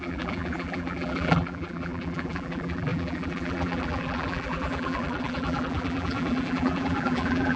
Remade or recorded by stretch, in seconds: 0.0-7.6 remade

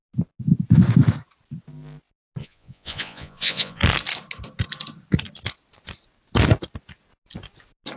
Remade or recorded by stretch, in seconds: 0.0-2.4 recorded; 2.4-3.8 remade; 3.8-8.0 recorded

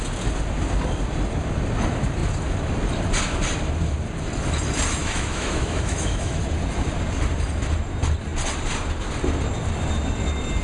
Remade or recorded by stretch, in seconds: 0.0-5.0 recorded; 5.0-6.4 remade; 6.4-10.6 recorded

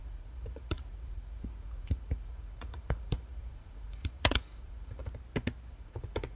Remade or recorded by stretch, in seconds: 0.0-5.0 remade; 5.0-5.7 recorded; 5.7-6.3 remade

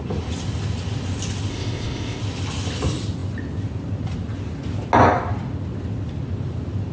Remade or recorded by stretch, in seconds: 0.0-1.5 recorded; 1.5-2.2 remade; 2.2-6.9 recorded

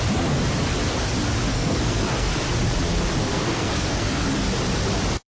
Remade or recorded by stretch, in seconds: 0.0-1.5 recorded; 1.5-2.3 remade; 2.3-3.2 recorded; 3.2-4.2 remade; 4.2-5.4 recorded

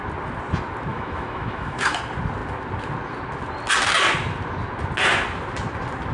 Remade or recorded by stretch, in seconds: 0.0-0.9 recorded; 0.9-2.0 remade; 2.0-6.1 recorded